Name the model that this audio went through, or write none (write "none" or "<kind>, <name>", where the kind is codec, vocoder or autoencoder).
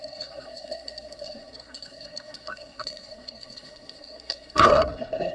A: codec, SNAC